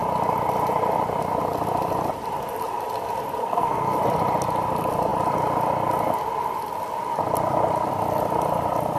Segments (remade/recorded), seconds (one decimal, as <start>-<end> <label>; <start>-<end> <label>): 0.0-3.4 recorded; 3.4-4.0 remade; 4.0-9.0 recorded